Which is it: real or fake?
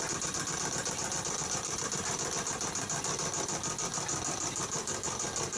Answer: fake